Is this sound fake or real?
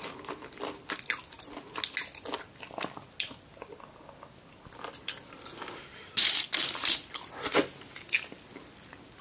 real